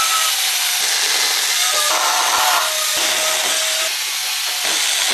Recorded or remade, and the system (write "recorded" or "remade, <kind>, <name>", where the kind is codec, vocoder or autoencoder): recorded